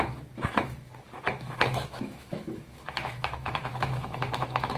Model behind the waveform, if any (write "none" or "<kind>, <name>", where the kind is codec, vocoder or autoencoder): autoencoder, DAC-VAE